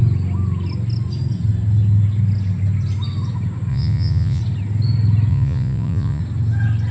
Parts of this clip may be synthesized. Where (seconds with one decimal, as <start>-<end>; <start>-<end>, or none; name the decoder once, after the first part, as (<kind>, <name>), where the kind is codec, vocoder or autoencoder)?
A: 3.7-4.4 (vocoder, Vocos); 5.3-6.2